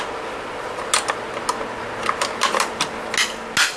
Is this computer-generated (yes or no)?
no